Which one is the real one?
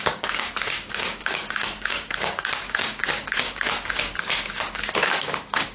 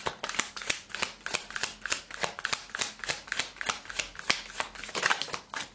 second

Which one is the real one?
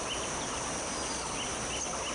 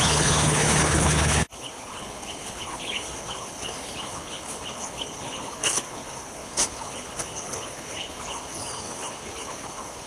first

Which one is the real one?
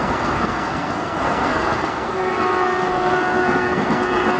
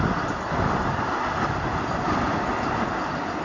second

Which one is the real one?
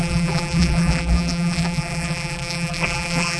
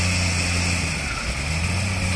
second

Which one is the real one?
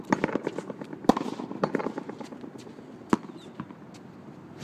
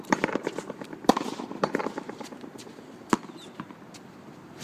first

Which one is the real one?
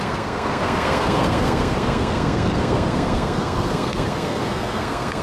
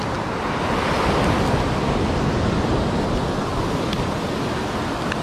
second